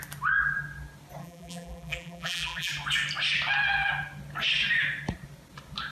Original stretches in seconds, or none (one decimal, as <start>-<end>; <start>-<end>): 0.0-1.2; 2.7-5.9